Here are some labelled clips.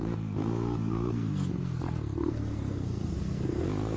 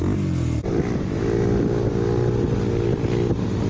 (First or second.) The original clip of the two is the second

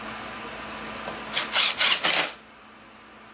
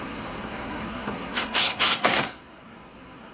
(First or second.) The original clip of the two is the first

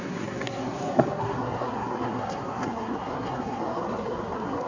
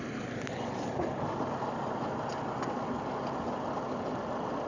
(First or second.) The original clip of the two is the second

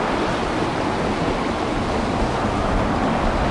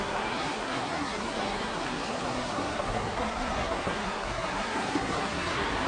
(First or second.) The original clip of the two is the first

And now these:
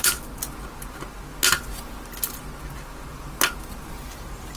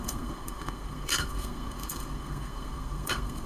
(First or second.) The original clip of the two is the first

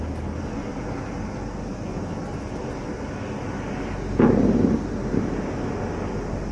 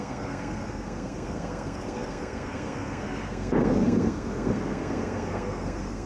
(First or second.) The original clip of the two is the first